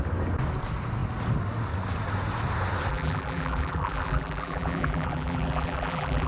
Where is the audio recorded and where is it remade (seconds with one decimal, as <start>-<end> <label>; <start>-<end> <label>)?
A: 0.0-2.9 recorded; 2.9-6.3 remade